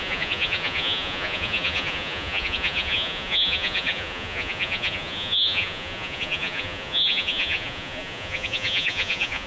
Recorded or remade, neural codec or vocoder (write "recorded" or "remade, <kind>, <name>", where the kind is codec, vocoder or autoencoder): remade, vocoder, Vocos